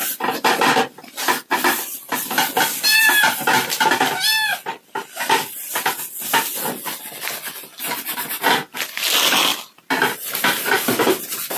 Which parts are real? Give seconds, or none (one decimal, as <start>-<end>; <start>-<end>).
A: 0.0-5.0; 5.9-11.6